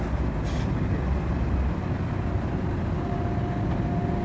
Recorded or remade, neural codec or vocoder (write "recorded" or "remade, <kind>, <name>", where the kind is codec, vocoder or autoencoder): recorded